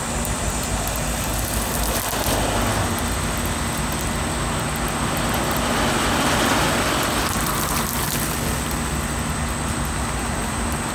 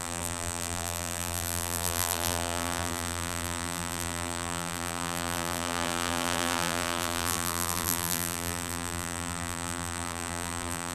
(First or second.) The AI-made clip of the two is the second